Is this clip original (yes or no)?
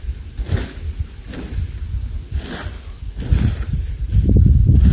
yes